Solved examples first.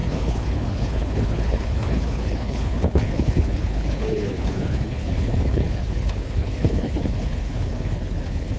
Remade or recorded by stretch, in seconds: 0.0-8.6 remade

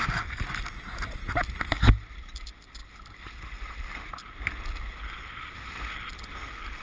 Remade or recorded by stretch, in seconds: 0.0-6.8 recorded

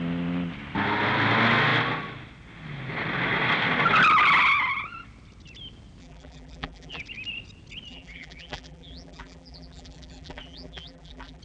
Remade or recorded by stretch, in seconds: 0.0-6.0 recorded; 6.0-7.0 remade; 7.0-7.9 recorded; 7.9-11.4 remade